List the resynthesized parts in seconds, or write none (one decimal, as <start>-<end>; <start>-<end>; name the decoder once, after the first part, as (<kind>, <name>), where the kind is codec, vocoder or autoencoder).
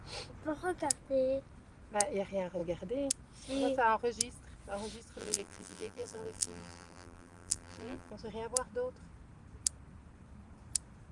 5.2-8.1 (vocoder, BigVGAN v2)